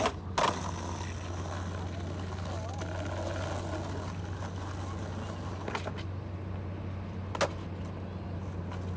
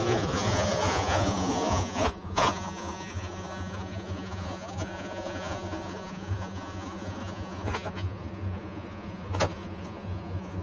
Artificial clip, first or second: second